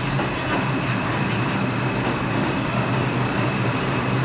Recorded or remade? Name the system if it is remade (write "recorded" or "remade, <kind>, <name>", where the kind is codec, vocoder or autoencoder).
recorded